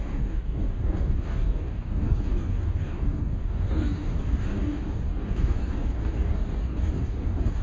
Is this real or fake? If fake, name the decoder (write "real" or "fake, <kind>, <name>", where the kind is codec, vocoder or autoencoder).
fake, codec, DAC